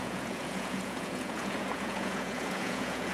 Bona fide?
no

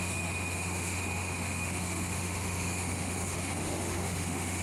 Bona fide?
no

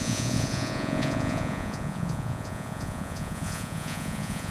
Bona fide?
no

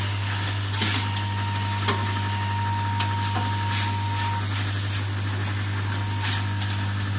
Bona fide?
yes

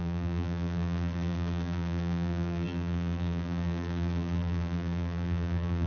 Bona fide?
no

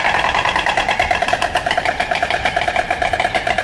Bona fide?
no